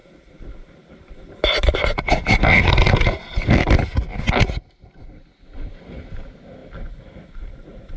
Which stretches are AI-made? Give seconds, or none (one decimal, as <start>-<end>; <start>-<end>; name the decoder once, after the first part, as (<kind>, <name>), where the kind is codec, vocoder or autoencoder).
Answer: 0.0-2.7 (vocoder, BigVGAN v2); 6.6-7.5